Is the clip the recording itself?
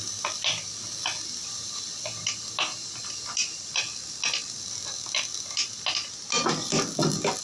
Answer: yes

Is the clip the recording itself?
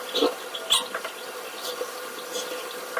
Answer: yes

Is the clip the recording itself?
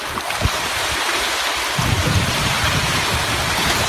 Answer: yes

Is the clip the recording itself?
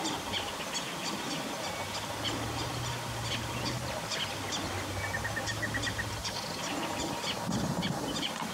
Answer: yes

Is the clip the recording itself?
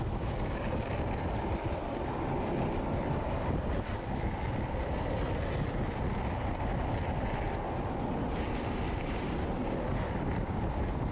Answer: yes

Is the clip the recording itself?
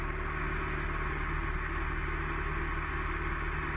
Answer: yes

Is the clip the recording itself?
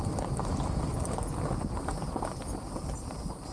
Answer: yes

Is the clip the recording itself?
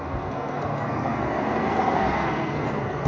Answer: no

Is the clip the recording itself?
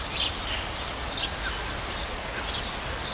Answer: yes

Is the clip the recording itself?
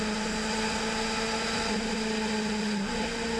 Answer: yes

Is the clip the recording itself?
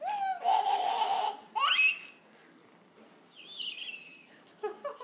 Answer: yes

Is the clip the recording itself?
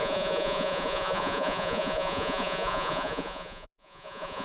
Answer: no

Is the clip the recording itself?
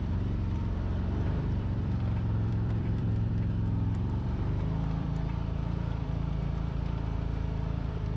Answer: no